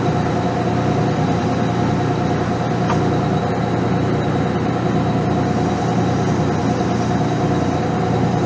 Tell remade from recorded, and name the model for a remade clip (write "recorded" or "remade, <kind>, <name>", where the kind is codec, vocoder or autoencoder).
recorded